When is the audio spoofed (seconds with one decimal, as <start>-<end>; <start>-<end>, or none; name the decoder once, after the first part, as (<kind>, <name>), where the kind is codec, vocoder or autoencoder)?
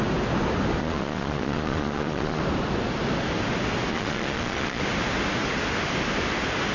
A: 0.8-2.4 (vocoder, Vocos); 3.9-4.8